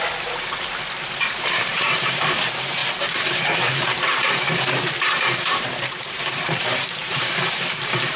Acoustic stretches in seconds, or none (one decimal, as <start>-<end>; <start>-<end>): none